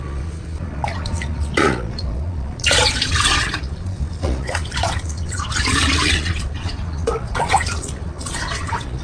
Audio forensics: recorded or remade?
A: remade